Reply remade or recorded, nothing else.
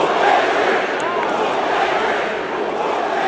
recorded